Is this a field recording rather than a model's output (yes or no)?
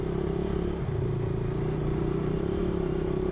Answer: yes